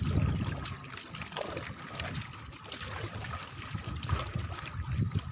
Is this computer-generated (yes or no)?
no